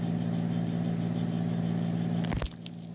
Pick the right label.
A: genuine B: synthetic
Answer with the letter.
A